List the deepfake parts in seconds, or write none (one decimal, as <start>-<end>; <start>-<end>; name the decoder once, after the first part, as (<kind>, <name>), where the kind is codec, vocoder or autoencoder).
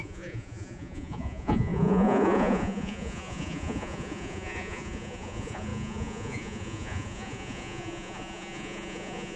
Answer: 0.0-9.4 (vocoder, Vocos)